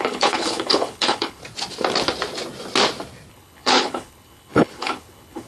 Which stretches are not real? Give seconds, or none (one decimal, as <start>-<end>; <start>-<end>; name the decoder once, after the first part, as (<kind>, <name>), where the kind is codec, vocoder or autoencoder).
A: 0.0-1.4 (codec, HILCodec); 3.3-5.5

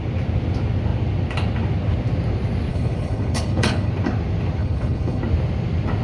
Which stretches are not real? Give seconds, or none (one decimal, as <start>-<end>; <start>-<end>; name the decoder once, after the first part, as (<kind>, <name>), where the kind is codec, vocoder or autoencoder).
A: 2.7-3.9 (codec, HILCodec); 4.6-5.2

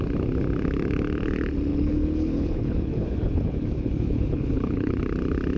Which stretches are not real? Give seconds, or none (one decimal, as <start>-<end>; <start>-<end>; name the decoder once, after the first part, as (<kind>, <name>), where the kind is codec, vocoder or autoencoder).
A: 1.7-5.0 (codec, HILCodec)